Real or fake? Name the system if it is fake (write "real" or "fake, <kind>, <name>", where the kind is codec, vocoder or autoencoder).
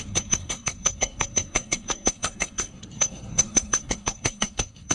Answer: fake, codec, SNAC